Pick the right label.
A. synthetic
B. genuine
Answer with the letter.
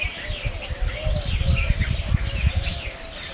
B